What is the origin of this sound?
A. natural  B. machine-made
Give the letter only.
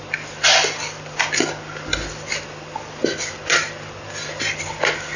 A